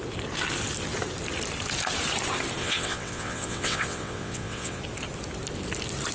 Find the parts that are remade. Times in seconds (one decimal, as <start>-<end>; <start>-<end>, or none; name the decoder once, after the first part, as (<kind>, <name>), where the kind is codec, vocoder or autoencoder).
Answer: 2.6-4.8 (vocoder, WaveNeXt)